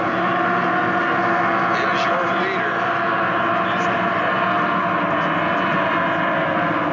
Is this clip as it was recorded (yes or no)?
yes